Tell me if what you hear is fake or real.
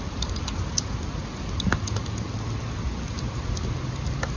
real